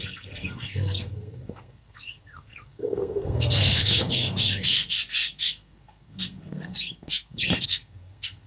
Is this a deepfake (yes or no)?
yes